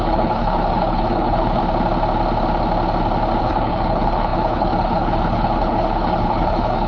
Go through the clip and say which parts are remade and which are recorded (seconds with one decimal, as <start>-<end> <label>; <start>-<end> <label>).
0.0-1.6 remade; 1.6-3.4 recorded; 3.4-6.9 remade